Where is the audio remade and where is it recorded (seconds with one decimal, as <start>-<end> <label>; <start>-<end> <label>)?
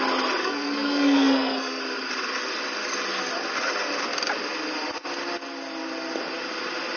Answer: 0.0-0.4 recorded; 0.4-1.8 remade; 1.8-7.0 recorded